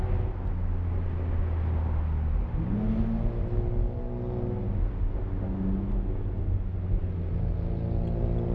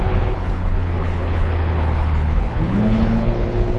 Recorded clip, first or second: first